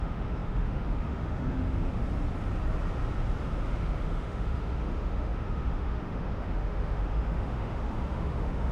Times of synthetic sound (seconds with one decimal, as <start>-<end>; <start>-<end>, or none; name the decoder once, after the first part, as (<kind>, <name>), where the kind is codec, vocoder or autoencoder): 0.0-2.0 (autoencoder, DAC-VAE); 3.7-8.7